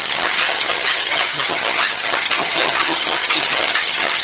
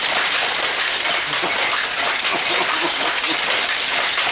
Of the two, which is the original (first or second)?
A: second